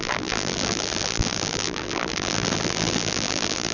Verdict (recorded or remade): remade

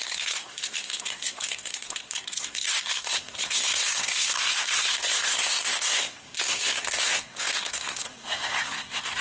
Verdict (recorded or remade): remade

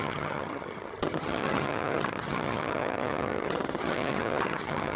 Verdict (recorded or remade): remade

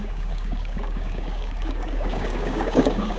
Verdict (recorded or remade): remade